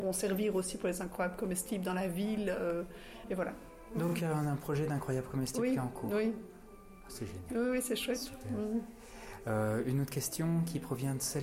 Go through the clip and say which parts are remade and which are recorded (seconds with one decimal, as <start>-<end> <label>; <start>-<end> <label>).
0.0-8.2 recorded; 8.2-9.1 remade; 9.1-11.4 recorded